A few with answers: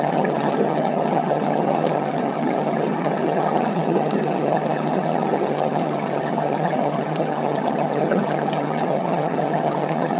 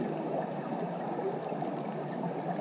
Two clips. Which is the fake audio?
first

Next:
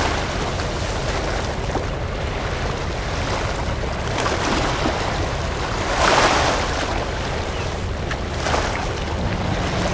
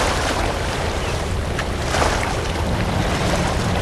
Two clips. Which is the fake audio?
second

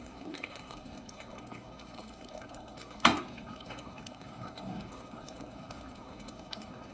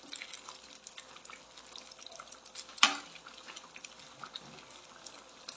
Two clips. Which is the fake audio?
first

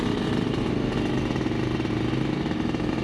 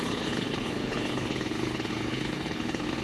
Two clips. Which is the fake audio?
second